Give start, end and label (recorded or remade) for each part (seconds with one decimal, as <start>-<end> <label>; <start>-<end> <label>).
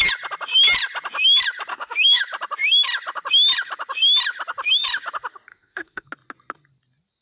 0.0-1.7 recorded; 1.7-2.2 remade; 2.2-5.5 recorded; 5.5-6.1 remade; 6.1-7.2 recorded